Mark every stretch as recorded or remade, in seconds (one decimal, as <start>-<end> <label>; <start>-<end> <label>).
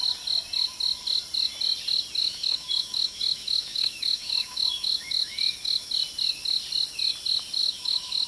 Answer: 0.0-2.2 recorded; 2.2-5.9 remade; 5.9-7.6 recorded; 7.6-8.3 remade